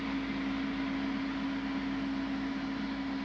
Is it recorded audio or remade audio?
recorded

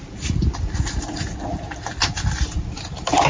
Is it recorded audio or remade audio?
recorded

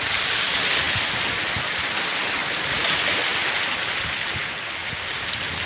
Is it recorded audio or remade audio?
recorded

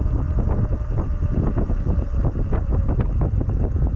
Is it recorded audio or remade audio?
recorded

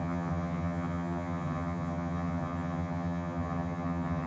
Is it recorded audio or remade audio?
remade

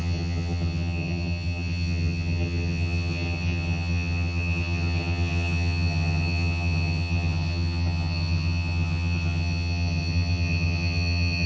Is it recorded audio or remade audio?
remade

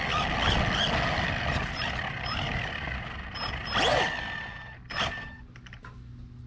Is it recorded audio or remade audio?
recorded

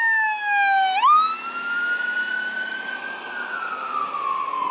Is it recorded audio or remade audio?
recorded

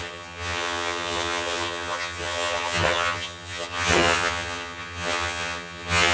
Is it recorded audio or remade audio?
remade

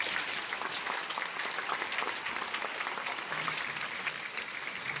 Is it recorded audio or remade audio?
recorded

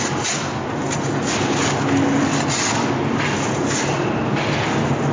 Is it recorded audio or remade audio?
recorded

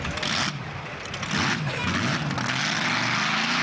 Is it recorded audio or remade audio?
recorded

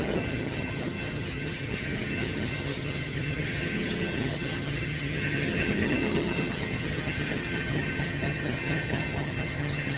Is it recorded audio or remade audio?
remade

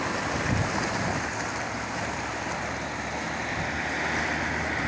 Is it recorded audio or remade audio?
recorded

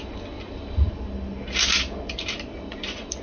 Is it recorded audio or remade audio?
recorded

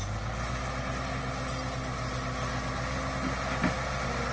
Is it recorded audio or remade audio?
recorded